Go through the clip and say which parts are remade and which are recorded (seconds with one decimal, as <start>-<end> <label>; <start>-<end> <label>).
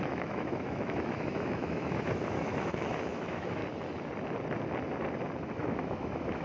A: 0.0-3.6 remade; 3.6-5.5 recorded; 5.5-6.4 remade